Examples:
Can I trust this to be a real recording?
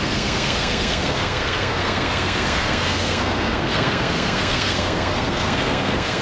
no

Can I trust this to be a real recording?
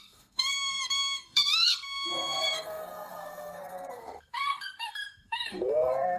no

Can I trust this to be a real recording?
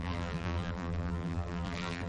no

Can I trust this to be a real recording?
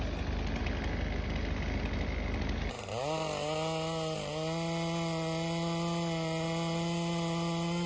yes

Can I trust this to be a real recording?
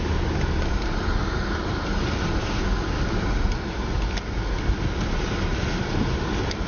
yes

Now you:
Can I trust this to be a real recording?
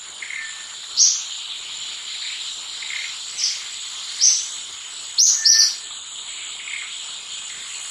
yes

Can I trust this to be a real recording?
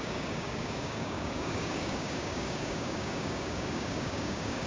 no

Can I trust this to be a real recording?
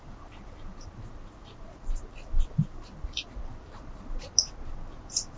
yes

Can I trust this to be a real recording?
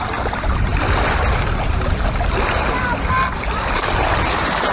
yes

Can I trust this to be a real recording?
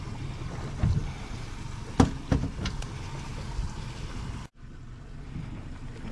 yes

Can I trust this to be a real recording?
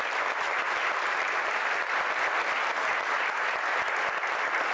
yes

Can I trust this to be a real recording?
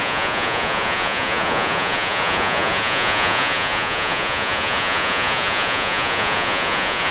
no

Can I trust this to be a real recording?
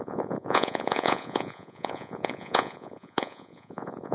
no